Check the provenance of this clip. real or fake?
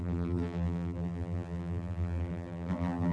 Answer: fake